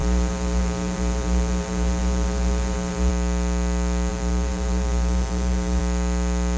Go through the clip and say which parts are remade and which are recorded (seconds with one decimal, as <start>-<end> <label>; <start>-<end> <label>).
0.0-3.1 remade; 3.1-4.1 recorded; 4.1-5.8 remade; 5.8-6.6 recorded